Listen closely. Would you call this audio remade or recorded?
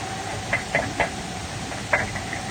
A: recorded